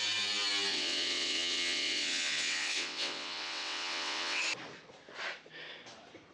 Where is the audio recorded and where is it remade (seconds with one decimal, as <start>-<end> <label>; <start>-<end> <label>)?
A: 0.0-0.7 recorded; 0.7-4.4 remade; 4.4-6.3 recorded